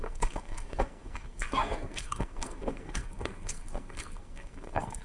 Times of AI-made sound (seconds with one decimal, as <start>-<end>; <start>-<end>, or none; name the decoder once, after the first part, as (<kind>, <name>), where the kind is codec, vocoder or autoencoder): 0.0-5.0 (codec, SNAC)

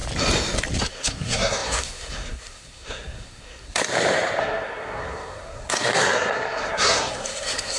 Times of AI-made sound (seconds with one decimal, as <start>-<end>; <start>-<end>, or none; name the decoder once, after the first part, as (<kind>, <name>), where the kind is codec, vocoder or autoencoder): 0.8-3.8 (codec, SNAC); 4.4-7.8